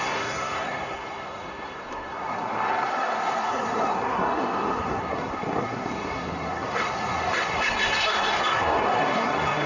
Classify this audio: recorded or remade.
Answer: remade